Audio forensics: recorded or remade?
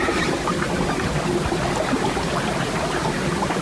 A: recorded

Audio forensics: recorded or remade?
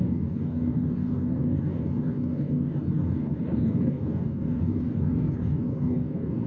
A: remade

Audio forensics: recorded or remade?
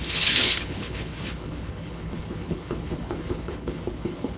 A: remade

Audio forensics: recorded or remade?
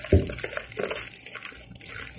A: remade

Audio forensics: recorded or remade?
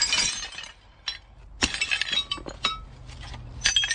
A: recorded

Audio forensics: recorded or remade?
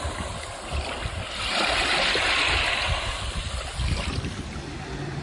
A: recorded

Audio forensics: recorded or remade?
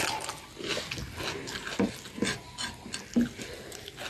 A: recorded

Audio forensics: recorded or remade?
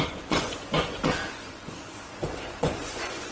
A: remade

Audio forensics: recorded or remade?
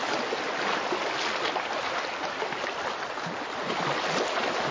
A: recorded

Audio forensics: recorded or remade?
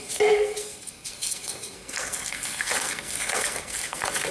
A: remade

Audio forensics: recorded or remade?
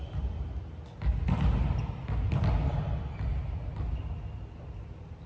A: recorded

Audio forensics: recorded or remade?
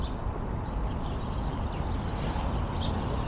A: recorded